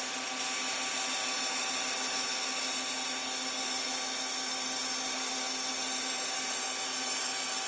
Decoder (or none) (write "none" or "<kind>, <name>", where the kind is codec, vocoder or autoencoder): none